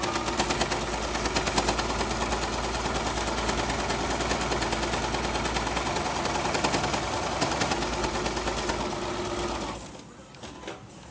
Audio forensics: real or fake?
real